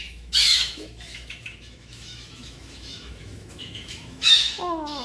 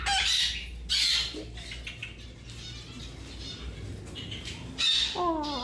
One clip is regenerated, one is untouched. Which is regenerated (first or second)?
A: first